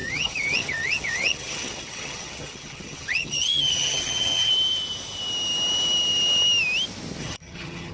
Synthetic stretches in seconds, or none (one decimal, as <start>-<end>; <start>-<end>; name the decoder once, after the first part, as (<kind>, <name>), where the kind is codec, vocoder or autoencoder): 0.0-4.5 (vocoder, HiFi-GAN); 7.2-7.9